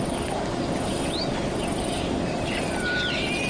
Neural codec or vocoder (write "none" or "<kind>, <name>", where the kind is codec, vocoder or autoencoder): vocoder, BigVGAN v2